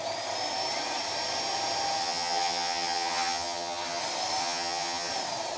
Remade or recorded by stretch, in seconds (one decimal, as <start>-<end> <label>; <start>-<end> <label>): 0.0-2.0 recorded; 2.0-4.0 remade; 4.0-4.4 recorded; 4.4-5.1 remade; 5.1-5.6 recorded